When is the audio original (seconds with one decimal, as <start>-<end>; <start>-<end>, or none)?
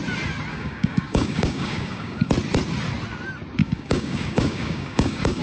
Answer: 0.0-0.5; 2.3-3.6